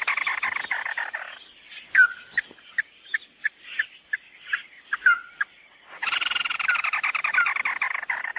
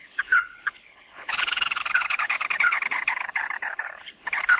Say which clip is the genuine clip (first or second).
first